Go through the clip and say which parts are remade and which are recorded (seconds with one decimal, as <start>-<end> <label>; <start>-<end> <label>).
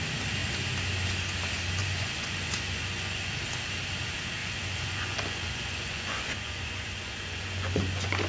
0.0-1.8 recorded; 1.8-3.3 remade; 3.3-4.4 recorded; 4.4-8.3 remade